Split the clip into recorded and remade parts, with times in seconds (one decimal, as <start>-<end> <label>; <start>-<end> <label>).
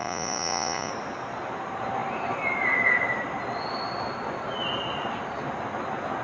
0.0-0.9 remade; 0.9-6.2 recorded